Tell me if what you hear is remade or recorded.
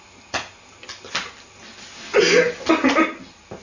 recorded